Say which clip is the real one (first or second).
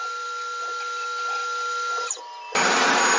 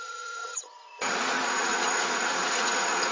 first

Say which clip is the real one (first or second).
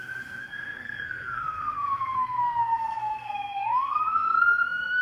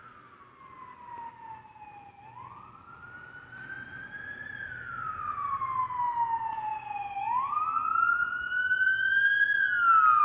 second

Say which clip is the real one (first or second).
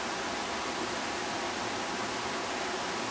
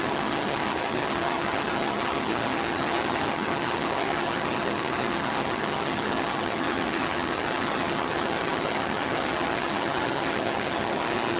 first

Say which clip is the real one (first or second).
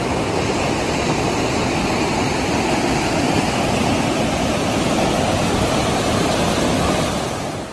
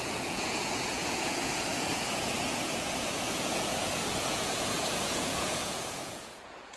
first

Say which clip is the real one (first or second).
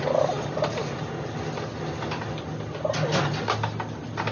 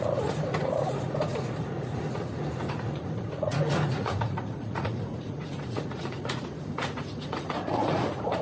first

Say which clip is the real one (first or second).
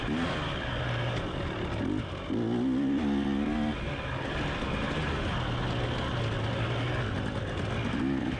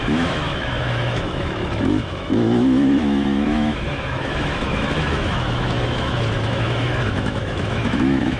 first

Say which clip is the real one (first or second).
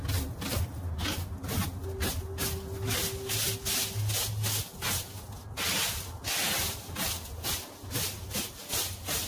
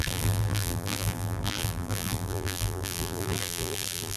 first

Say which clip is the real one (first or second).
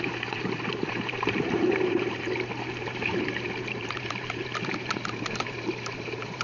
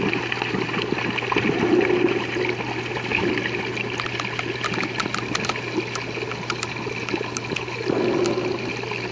second